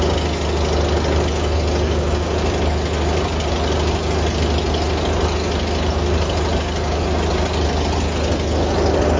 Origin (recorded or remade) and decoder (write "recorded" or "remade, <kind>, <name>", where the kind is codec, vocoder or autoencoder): recorded